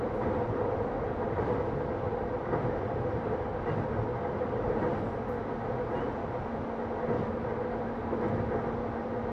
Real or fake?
real